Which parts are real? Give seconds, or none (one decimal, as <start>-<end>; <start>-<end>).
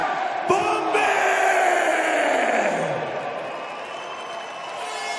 0.0-5.2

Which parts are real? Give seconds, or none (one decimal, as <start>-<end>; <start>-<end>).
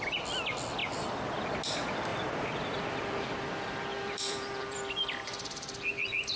0.0-0.8; 1.5-2.1; 2.8-3.9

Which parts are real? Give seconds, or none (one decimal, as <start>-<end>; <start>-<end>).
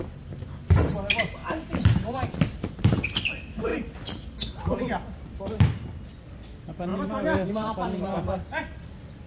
0.0-1.4; 2.9-3.7; 5.4-6.9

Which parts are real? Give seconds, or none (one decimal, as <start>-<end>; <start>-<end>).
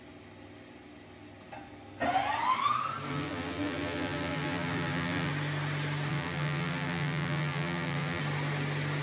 0.0-3.1; 5.3-6.1; 8.2-9.0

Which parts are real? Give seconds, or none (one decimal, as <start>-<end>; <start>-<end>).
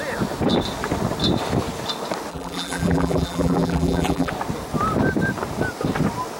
0.0-2.3; 4.3-6.4